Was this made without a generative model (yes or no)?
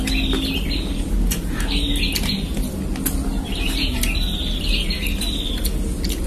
yes